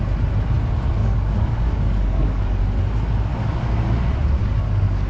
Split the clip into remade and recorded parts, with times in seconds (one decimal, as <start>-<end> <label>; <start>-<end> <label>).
0.0-1.0 recorded; 1.0-2.6 remade; 2.6-3.3 recorded; 3.3-3.9 remade; 3.9-4.4 recorded; 4.4-5.1 remade